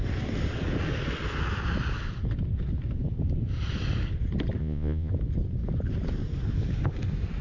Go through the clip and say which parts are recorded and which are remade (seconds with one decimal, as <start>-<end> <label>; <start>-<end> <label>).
0.0-4.6 recorded; 4.6-5.1 remade; 5.1-7.4 recorded